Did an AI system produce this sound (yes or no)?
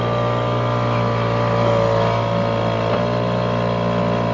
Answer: no